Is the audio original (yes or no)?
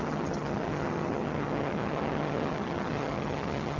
no